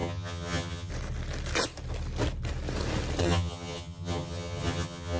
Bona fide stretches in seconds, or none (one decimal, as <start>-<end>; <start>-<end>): 0.9-3.2